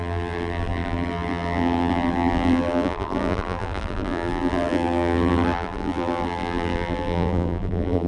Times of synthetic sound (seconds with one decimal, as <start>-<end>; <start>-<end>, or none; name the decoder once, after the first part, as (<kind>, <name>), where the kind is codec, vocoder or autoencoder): 0.0-8.1 (vocoder, BigVGAN v2)